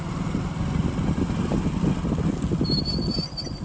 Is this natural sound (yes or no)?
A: yes